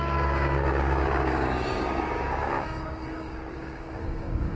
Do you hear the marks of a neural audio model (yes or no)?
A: yes